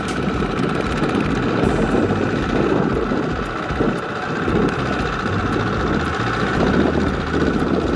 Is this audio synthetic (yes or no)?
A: no